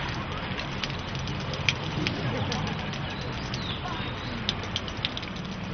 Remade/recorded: recorded